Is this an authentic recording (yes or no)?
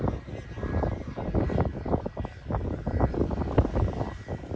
yes